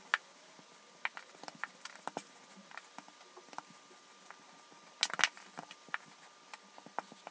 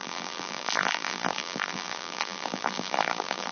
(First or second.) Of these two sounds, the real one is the first